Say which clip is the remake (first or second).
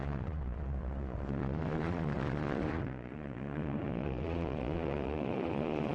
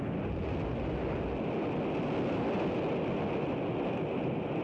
first